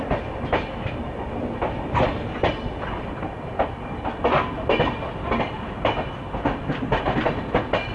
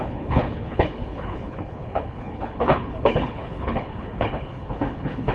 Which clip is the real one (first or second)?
first